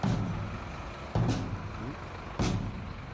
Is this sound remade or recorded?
recorded